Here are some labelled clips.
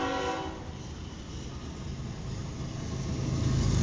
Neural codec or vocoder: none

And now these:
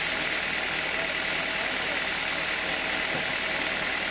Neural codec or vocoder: none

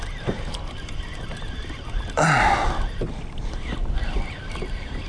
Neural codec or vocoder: none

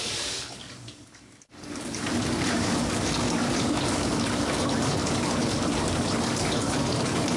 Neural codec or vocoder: codec, DAC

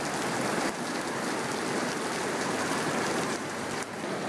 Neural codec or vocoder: vocoder, BigVGAN v2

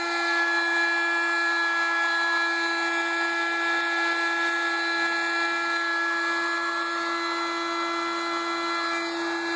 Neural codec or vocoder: none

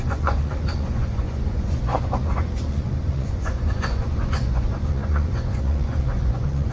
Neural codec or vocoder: vocoder, Vocos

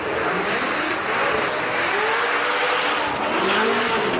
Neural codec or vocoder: none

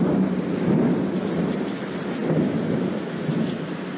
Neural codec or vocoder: vocoder, BigVGAN v2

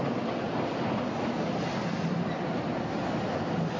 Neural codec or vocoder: none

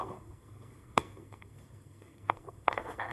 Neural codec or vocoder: codec, SNAC